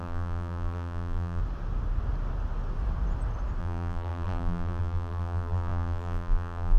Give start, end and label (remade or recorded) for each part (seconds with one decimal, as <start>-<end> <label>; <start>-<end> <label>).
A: 0.0-1.4 remade; 1.4-3.6 recorded; 3.6-6.8 remade